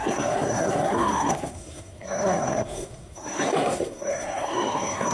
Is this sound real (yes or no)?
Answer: no